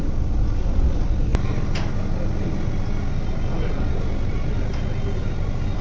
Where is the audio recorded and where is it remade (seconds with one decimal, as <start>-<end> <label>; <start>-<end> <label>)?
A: 0.0-5.8 recorded